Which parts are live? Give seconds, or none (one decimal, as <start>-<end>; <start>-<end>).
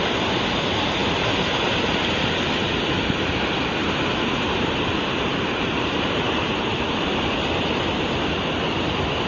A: 0.0-3.8; 7.4-9.3